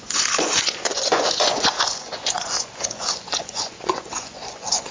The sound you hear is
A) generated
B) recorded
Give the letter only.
A